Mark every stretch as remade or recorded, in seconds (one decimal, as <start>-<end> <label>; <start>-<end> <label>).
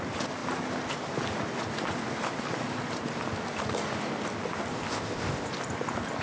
0.0-4.7 recorded; 4.7-5.5 remade; 5.5-6.2 recorded